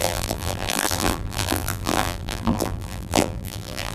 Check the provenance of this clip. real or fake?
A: fake